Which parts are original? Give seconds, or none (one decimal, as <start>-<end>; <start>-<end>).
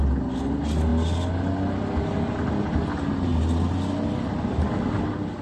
0.0-5.4